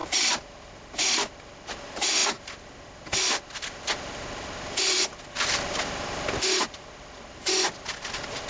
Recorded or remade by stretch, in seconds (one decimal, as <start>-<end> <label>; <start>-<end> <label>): 0.0-8.5 recorded